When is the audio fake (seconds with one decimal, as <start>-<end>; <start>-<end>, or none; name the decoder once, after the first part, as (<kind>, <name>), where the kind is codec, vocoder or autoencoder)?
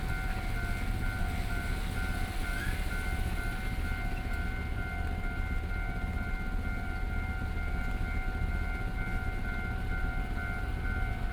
none